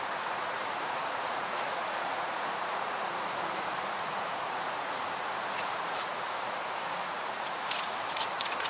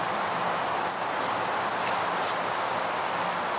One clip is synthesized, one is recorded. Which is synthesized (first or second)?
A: first